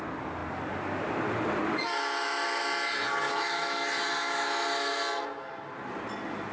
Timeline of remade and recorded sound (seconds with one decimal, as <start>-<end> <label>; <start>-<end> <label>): 0.0-1.7 recorded; 1.7-2.6 remade; 2.6-3.3 recorded; 3.3-5.0 remade; 5.0-6.5 recorded